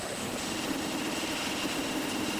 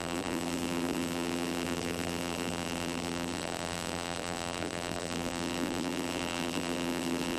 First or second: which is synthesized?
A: second